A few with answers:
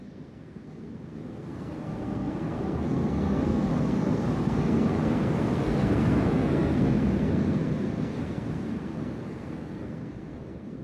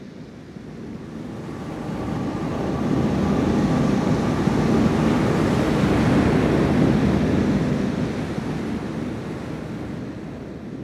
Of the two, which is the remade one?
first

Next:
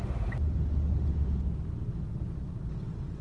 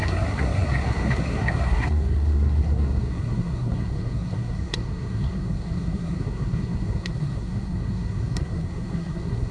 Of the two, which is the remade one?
second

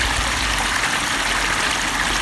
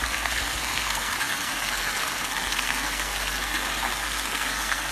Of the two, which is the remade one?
second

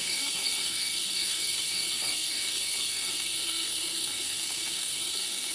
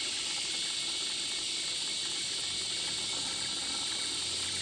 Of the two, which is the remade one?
first